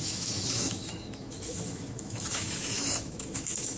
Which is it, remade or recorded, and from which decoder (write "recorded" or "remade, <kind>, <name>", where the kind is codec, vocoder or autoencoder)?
remade, autoencoder, DAC-VAE